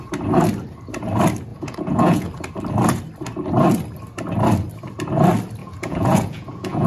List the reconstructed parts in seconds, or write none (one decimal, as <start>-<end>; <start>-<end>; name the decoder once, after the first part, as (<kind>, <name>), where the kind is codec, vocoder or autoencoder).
1.5-2.3 (vocoder, Vocos); 5.6-6.9